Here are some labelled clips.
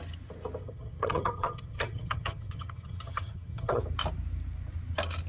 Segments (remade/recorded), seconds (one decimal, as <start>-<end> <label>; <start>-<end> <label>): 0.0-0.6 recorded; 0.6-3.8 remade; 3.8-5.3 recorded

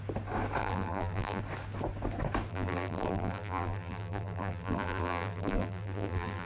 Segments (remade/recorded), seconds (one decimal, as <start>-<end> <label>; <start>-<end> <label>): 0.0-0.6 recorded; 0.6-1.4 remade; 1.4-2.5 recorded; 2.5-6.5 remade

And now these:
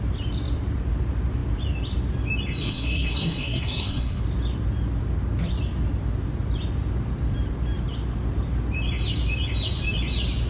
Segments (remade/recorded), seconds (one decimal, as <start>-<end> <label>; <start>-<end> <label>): 0.0-2.6 recorded; 2.6-4.2 remade; 4.2-10.5 recorded

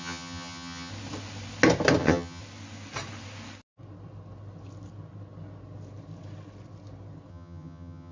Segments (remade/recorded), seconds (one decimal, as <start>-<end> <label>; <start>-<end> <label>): 0.0-0.9 remade; 0.9-2.0 recorded; 2.0-2.4 remade; 2.4-7.3 recorded; 7.3-8.1 remade

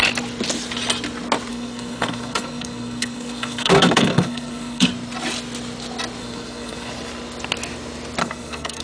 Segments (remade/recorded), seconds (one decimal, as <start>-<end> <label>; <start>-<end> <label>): 0.0-1.5 recorded; 1.5-4.9 remade; 4.9-6.2 recorded; 6.2-6.9 remade; 6.9-8.2 recorded; 8.2-8.8 remade

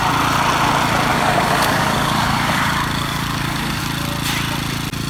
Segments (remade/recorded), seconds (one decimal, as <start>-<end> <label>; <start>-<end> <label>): 0.0-1.1 recorded; 1.1-3.8 remade; 3.8-5.1 recorded